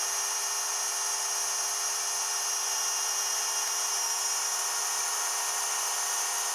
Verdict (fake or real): fake